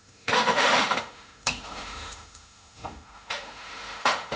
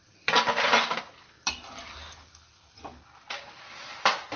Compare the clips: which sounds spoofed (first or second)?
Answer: first